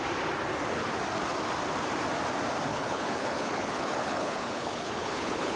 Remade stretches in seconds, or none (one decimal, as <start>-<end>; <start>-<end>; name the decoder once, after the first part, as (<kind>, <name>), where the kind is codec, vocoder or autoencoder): 2.7-5.6 (codec, HILCodec)